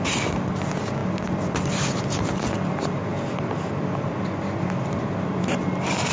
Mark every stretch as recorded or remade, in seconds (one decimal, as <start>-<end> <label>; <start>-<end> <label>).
0.0-6.1 recorded